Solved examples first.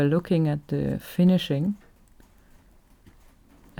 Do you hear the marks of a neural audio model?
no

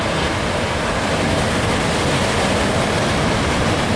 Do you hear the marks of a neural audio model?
no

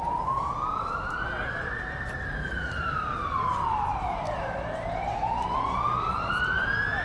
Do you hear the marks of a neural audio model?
yes